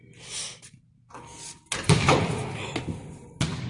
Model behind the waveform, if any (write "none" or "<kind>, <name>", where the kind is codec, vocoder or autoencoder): none